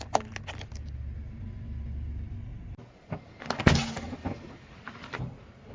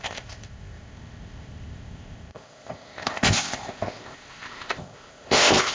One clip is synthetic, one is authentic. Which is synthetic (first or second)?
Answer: second